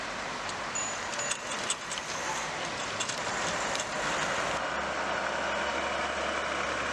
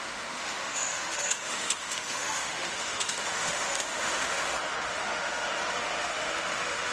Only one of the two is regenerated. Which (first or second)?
second